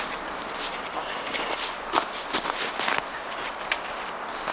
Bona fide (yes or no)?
yes